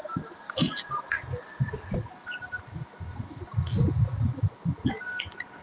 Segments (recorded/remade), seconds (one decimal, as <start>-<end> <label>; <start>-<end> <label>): 0.0-5.6 recorded